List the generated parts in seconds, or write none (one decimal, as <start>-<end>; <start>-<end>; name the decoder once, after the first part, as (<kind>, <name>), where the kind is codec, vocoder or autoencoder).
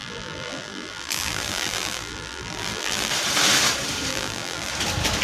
0.0-3.1 (vocoder, BigVGAN v2); 4.1-4.7